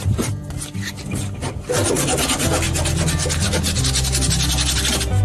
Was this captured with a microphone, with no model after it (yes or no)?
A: yes